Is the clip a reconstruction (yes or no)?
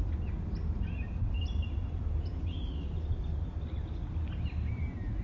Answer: no